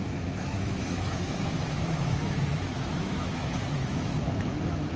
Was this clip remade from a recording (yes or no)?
yes